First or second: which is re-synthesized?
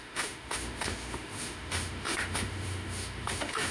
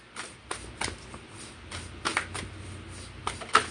first